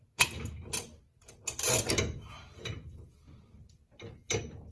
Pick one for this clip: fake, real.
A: real